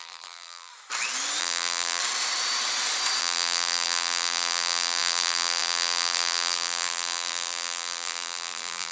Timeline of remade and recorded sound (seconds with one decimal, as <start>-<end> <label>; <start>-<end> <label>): 0.0-0.7 remade; 0.7-1.4 recorded; 1.4-2.0 remade; 2.0-3.2 recorded; 3.2-8.9 remade